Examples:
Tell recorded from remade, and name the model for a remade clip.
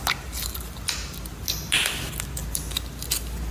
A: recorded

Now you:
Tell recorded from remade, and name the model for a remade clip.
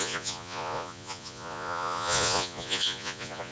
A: remade, vocoder, Vocos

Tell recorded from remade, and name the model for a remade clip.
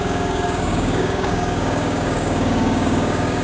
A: remade, codec, DAC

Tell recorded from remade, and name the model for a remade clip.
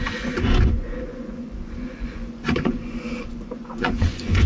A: remade, vocoder, Vocos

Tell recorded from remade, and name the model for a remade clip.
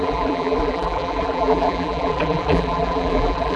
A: remade, vocoder, BigVGAN v2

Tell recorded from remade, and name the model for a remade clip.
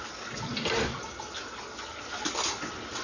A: recorded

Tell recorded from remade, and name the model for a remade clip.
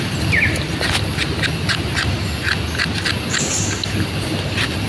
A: recorded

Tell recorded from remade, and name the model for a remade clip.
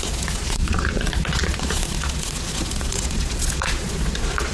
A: remade, vocoder, Vocos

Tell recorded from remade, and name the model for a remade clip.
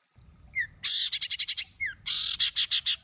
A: recorded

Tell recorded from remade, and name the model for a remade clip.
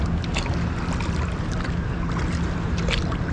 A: recorded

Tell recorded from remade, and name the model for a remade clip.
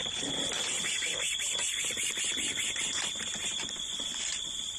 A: remade, vocoder, BigVGAN v2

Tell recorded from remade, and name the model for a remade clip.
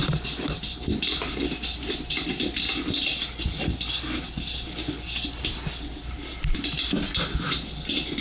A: recorded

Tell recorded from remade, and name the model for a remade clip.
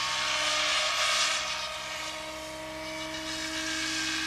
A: recorded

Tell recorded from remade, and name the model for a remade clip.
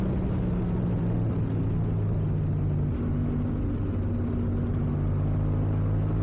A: recorded